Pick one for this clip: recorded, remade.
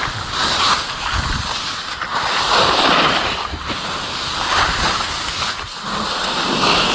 recorded